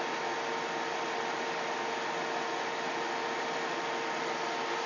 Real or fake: real